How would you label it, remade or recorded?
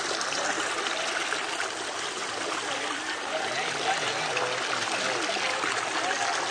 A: recorded